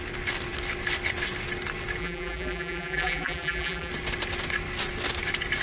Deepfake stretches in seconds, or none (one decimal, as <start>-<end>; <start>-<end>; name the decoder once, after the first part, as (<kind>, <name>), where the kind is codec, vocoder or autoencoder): 2.0-3.9 (vocoder, BigVGAN v2)